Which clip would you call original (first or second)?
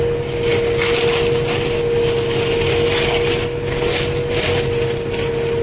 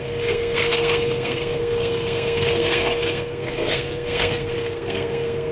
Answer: first